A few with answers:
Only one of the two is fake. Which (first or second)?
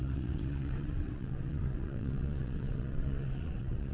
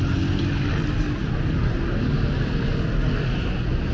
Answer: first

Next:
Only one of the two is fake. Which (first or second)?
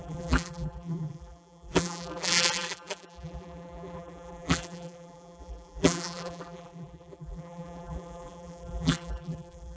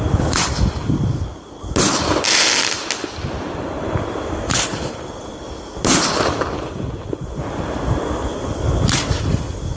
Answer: first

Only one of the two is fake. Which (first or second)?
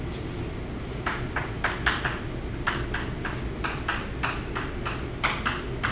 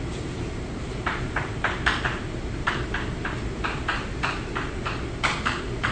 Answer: second